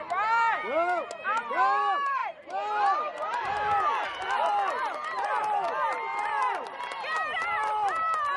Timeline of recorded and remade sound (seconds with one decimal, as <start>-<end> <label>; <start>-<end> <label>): 0.0-8.4 recorded

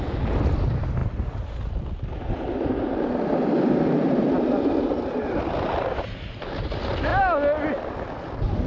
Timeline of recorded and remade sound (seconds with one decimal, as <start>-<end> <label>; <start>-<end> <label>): 0.0-8.7 recorded

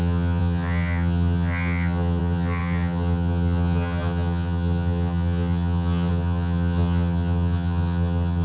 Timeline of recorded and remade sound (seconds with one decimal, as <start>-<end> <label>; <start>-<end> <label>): 0.0-8.4 remade

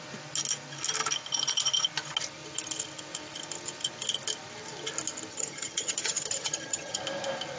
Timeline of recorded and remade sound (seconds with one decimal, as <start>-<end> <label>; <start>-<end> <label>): 0.0-5.3 recorded; 5.3-7.0 remade; 7.0-7.6 recorded

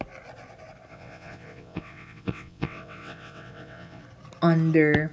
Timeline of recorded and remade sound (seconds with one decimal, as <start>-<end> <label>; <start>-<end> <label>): 0.0-0.9 recorded; 0.9-4.0 remade; 4.0-5.1 recorded